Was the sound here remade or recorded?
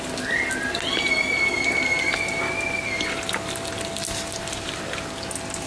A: recorded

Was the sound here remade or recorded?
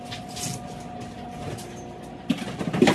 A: recorded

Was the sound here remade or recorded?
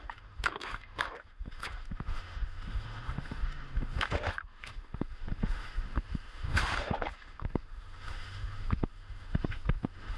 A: remade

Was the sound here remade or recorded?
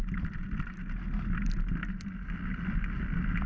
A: recorded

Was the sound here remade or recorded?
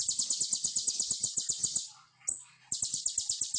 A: recorded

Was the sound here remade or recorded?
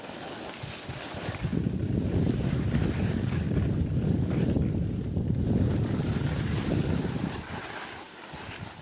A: recorded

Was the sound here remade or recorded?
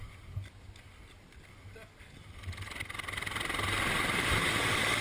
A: recorded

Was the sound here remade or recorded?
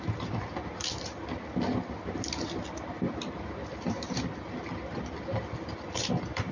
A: recorded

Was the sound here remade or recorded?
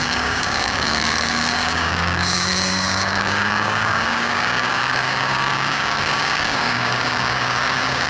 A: remade